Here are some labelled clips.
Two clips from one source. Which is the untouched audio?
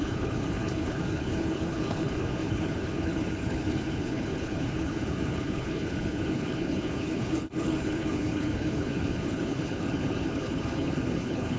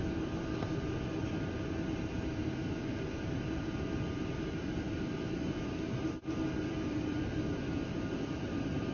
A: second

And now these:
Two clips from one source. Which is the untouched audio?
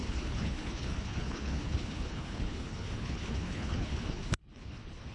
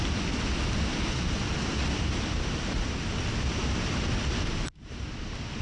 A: second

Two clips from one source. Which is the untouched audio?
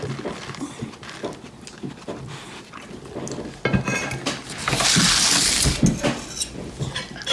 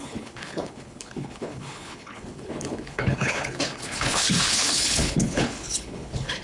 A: first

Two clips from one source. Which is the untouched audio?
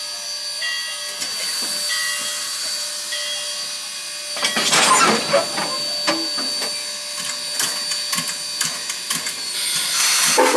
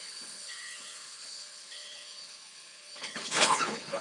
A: first